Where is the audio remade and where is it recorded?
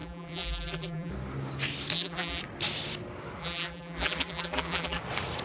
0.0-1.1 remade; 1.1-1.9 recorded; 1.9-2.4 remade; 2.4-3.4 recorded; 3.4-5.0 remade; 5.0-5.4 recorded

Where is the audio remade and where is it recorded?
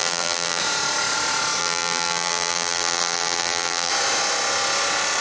0.0-0.6 remade; 0.6-1.6 recorded; 1.6-3.9 remade; 3.9-5.2 recorded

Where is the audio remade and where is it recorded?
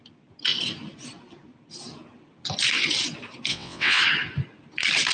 0.0-3.5 recorded; 3.5-4.0 remade; 4.0-5.1 recorded